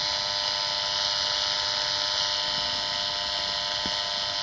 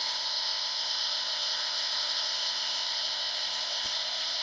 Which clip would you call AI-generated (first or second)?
second